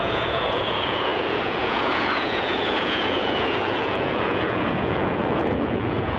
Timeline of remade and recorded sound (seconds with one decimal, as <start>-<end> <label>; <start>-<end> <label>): 0.0-6.2 remade